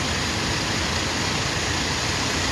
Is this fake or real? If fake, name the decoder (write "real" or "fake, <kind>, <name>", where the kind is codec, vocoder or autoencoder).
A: real